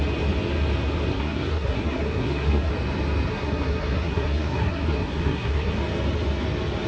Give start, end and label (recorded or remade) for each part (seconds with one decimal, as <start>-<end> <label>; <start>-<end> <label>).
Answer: 0.0-1.1 recorded; 1.1-2.7 remade; 2.7-3.3 recorded; 3.3-5.8 remade; 5.8-6.9 recorded